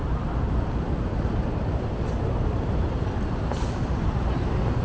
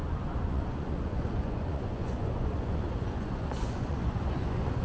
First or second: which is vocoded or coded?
second